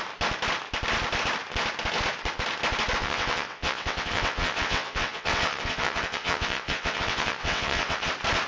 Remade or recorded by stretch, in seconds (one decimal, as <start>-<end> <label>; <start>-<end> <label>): 0.0-3.0 recorded; 3.0-8.1 remade; 8.1-8.5 recorded